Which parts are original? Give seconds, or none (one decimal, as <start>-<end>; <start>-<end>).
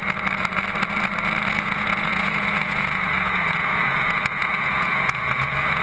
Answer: 0.0-1.5